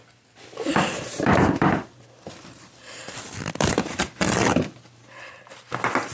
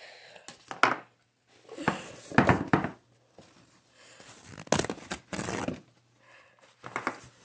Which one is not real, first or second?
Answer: first